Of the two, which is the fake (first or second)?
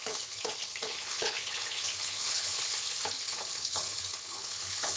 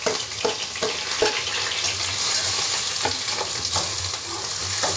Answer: first